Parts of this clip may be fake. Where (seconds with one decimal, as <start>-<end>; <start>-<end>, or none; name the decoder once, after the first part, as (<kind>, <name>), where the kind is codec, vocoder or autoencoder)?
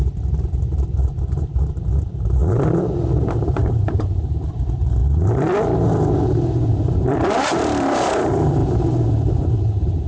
0.0-2.4 (vocoder, BigVGAN v2); 3.2-5.0; 6.7-10.1